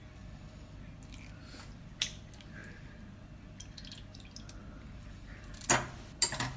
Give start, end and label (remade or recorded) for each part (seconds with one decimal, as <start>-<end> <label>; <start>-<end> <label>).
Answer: 0.0-6.6 recorded